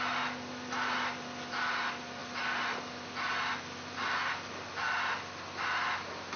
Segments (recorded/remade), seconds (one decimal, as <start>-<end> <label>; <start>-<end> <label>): 0.0-6.4 recorded